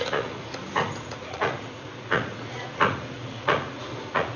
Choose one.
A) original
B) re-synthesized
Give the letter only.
B